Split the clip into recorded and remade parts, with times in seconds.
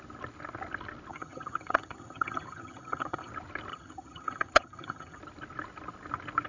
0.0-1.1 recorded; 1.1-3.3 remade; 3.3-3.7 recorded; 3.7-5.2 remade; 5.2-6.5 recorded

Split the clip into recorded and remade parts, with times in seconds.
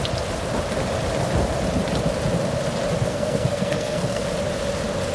0.0-3.0 recorded; 3.0-4.2 remade; 4.2-5.1 recorded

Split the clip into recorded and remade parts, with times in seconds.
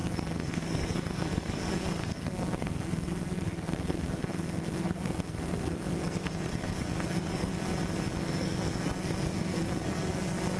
0.0-7.5 remade; 7.5-8.2 recorded; 8.2-10.6 remade